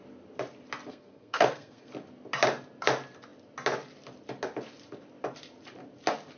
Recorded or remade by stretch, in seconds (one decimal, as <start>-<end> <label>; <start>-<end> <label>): 0.0-0.9 recorded; 0.9-1.9 remade; 1.9-6.4 recorded